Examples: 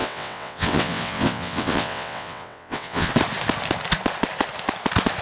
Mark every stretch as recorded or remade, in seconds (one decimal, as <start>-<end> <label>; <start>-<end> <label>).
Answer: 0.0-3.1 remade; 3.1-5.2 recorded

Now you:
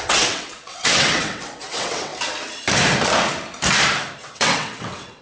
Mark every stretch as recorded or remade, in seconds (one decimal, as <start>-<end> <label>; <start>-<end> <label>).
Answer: 0.0-2.1 remade; 2.1-4.2 recorded; 4.2-5.2 remade

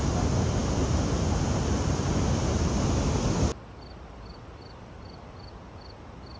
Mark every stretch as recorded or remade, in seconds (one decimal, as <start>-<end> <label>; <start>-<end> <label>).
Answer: 0.0-6.4 recorded

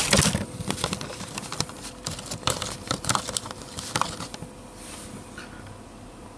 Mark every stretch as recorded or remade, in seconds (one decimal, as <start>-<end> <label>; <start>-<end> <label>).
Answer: 0.0-6.4 recorded

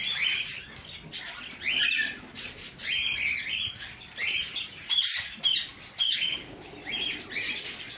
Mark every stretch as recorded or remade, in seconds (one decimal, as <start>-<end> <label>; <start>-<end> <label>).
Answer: 0.0-6.0 recorded; 6.0-6.7 remade; 6.7-8.0 recorded

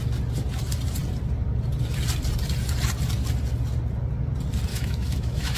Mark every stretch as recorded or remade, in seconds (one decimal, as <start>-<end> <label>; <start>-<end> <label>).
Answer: 0.0-4.7 recorded; 4.7-5.6 remade

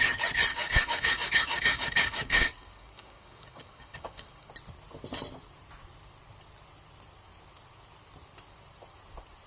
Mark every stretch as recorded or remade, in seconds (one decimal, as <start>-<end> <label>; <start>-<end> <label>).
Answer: 0.0-0.5 recorded; 0.5-4.5 remade; 4.5-9.5 recorded

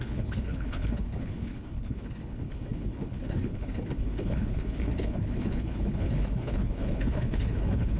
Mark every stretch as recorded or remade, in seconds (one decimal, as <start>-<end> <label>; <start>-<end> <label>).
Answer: 0.0-8.0 remade